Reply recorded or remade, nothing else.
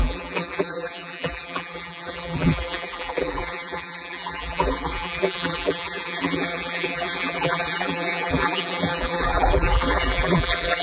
remade